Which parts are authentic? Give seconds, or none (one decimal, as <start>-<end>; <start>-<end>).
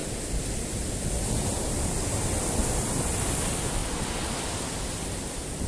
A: 0.0-5.7